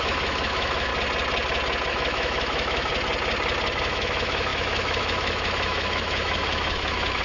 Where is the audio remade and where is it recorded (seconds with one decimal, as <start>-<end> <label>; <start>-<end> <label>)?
0.0-0.9 remade; 0.9-1.9 recorded; 1.9-2.9 remade; 2.9-3.9 recorded; 3.9-7.2 remade